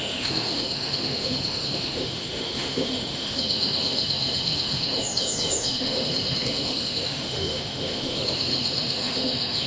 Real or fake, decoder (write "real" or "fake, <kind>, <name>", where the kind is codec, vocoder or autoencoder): fake, autoencoder, DAC-VAE